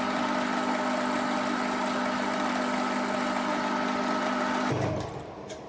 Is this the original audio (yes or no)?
yes